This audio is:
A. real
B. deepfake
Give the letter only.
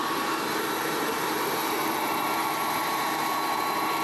B